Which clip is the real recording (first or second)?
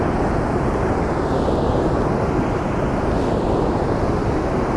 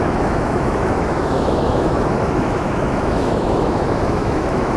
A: first